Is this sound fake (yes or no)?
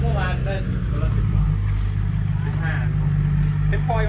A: no